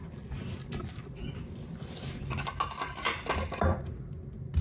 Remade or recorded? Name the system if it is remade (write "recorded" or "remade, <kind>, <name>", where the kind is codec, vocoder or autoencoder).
recorded